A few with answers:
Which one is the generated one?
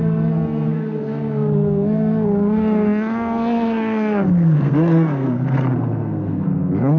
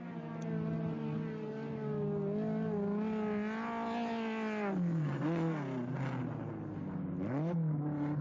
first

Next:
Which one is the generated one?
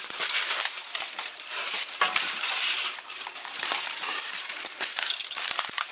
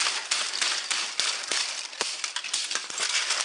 first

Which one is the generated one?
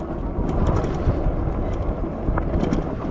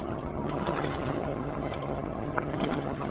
second